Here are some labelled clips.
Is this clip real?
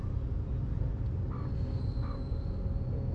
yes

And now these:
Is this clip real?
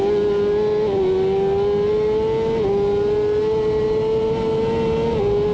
yes